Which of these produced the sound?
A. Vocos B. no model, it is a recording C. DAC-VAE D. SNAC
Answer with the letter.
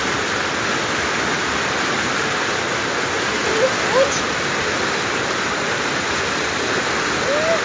B